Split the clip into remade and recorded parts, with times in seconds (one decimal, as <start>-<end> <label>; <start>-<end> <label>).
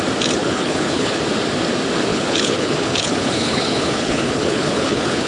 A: 0.0-0.4 recorded; 0.4-1.2 remade; 1.2-2.1 recorded; 2.1-5.3 remade